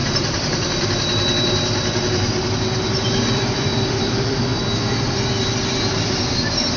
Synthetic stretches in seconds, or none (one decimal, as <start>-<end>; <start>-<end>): 0.0-4.5; 5.9-6.8